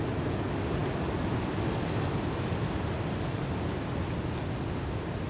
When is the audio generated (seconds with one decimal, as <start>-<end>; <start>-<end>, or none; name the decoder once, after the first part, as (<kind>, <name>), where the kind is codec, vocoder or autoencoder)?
none

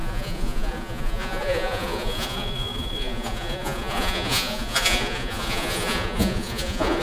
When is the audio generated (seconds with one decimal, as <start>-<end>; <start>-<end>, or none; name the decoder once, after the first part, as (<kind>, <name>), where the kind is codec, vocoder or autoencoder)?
0.0-7.0 (vocoder, Vocos)